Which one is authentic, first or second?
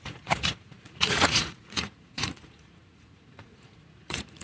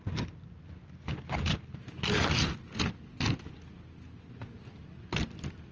second